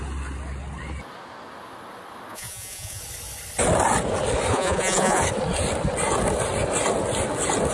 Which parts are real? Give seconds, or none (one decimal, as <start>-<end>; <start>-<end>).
0.0-2.3; 3.0-4.5; 5.2-7.7